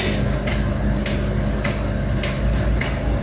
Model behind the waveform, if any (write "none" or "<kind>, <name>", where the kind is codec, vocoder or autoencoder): none